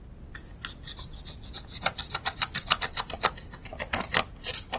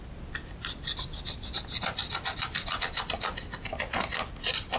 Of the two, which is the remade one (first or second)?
second